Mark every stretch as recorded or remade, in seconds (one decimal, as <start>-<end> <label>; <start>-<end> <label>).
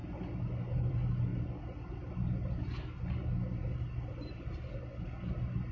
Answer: 0.0-5.7 recorded